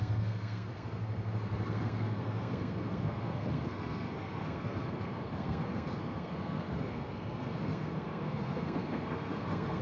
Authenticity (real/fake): fake